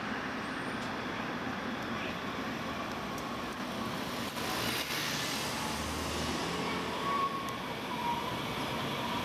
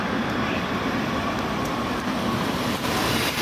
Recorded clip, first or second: first